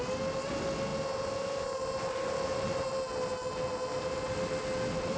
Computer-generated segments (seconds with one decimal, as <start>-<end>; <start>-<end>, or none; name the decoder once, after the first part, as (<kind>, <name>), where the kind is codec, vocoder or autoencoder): none